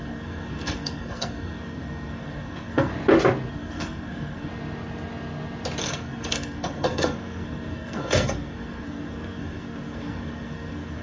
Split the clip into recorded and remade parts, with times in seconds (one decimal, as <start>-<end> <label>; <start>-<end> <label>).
0.0-2.9 remade; 2.9-3.5 recorded; 3.5-4.5 remade; 4.5-5.8 recorded; 5.8-11.0 remade